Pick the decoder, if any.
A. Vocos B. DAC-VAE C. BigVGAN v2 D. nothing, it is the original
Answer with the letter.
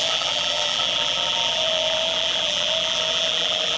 C